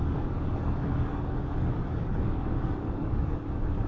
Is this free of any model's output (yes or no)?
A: no